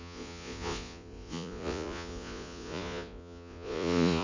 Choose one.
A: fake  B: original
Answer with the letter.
A